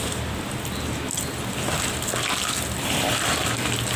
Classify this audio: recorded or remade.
recorded